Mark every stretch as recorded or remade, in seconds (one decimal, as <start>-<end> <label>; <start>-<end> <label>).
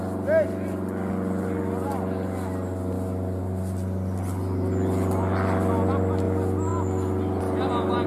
0.0-8.1 recorded